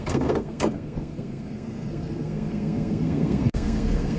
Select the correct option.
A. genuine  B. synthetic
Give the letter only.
B